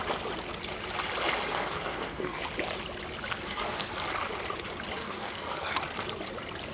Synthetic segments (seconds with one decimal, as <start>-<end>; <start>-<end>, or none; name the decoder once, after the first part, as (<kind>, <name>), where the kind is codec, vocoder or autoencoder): 1.5-2.4 (codec, SNAC); 3.3-3.9; 5.0-5.8